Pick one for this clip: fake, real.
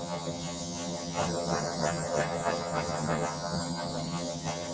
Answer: fake